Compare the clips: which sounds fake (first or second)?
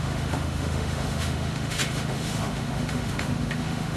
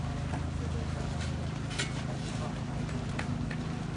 first